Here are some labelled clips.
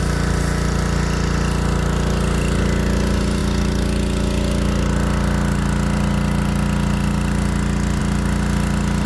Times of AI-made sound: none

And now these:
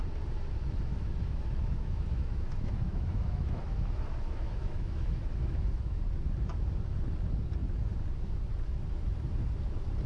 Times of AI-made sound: 0.9-6.0 (autoencoder, DAC-VAE)

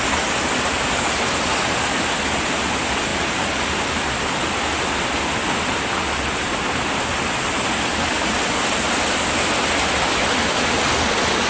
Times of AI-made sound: none

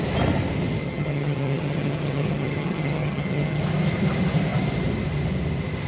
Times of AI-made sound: 0.8-3.6 (vocoder, HiFi-GAN)